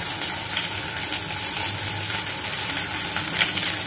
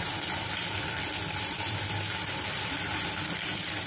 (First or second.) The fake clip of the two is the second